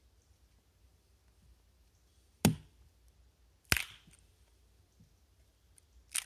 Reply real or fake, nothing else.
real